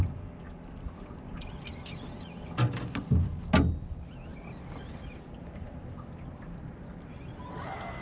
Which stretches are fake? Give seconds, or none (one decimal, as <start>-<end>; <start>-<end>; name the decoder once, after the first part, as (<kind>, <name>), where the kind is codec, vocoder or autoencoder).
none